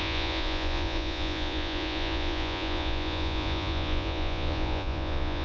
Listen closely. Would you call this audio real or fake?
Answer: fake